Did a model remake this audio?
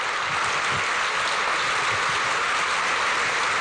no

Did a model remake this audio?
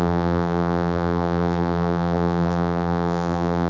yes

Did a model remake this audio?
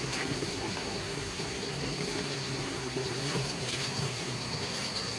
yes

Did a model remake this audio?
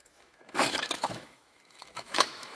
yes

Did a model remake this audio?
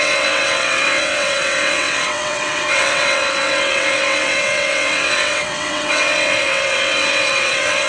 yes